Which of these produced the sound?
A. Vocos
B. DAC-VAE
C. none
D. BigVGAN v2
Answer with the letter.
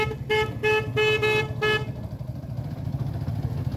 C